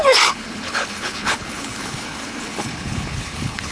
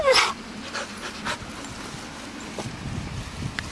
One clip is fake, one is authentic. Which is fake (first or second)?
first